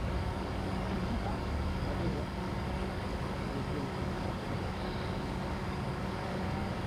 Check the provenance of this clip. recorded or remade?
remade